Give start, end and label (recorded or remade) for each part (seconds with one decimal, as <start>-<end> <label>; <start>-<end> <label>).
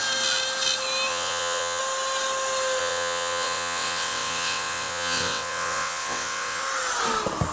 0.0-1.1 recorded; 1.1-1.8 remade; 1.8-2.8 recorded; 2.8-6.6 remade; 6.6-7.5 recorded